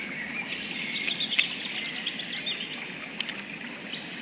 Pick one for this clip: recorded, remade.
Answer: recorded